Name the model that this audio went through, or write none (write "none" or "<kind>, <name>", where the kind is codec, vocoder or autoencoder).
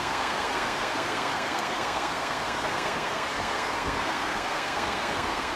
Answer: codec, SNAC